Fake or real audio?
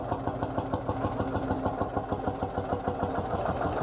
real